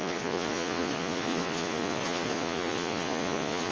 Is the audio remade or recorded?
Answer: remade